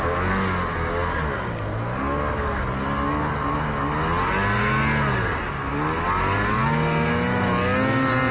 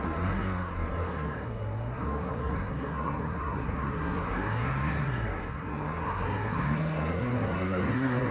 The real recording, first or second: first